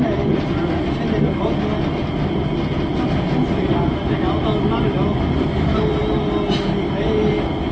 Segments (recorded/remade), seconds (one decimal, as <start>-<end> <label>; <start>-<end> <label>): 0.0-7.7 recorded